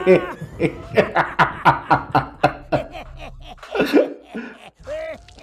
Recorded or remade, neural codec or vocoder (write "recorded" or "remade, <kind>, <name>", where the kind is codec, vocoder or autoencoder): recorded